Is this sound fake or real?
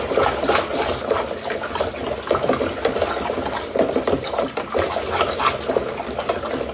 real